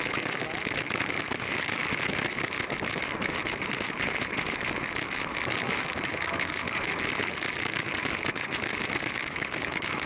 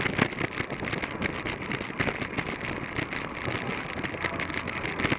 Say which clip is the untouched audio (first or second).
second